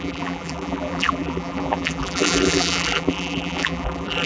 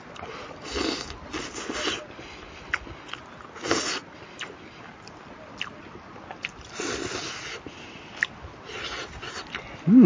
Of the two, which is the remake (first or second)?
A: first